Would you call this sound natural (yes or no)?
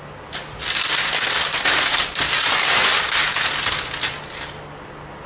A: yes